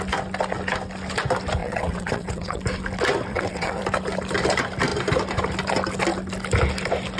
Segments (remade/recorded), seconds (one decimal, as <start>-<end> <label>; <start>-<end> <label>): 0.0-1.6 recorded; 1.6-2.6 remade; 2.6-3.3 recorded; 3.3-3.8 remade; 3.8-7.2 recorded